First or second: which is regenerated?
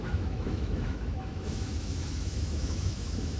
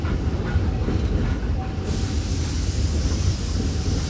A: first